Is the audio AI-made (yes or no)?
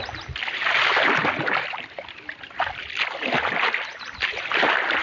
no